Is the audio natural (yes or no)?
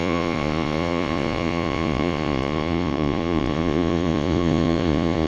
no